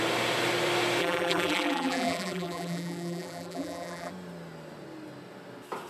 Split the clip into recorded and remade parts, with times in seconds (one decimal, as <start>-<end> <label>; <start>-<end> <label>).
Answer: 0.0-1.0 recorded; 1.0-4.1 remade; 4.1-5.9 recorded